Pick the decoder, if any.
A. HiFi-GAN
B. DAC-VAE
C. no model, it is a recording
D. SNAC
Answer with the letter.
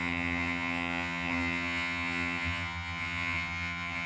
A